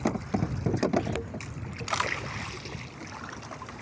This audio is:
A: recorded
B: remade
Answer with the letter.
A